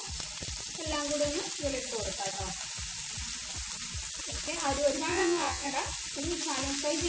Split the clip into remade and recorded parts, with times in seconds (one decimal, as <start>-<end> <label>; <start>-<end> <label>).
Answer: 0.0-5.1 recorded; 5.1-5.7 remade; 5.7-7.1 recorded